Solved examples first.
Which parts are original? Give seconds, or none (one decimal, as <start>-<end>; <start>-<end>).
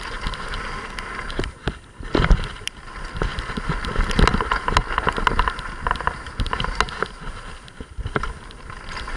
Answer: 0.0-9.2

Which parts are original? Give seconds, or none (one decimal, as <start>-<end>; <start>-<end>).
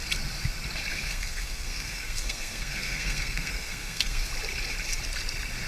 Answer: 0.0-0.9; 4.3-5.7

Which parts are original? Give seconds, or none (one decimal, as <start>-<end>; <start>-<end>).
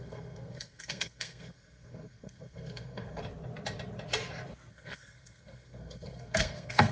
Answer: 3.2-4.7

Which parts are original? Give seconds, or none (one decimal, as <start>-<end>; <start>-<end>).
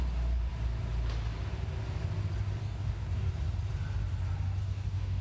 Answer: 0.0-2.6; 3.3-4.6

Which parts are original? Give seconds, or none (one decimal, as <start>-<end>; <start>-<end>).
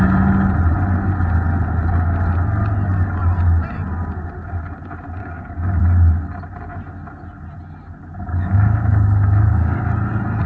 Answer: 0.0-5.2; 5.8-8.3; 9.9-10.5